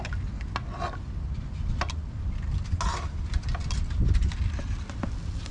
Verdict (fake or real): real